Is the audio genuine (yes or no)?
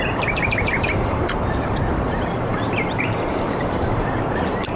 no